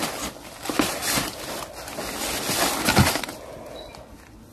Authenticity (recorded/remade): recorded